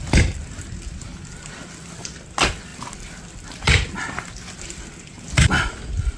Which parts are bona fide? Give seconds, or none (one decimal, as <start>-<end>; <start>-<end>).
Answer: 0.0-6.2